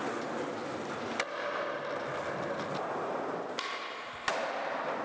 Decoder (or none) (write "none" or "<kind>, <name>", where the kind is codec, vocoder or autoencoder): none